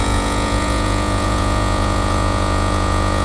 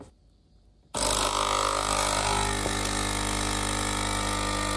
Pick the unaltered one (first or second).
second